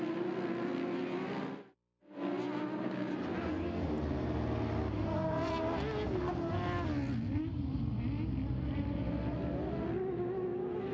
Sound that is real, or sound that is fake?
real